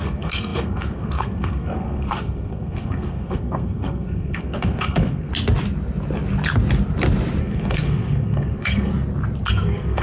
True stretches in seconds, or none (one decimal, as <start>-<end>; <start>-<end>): 5.3-7.4; 8.9-9.5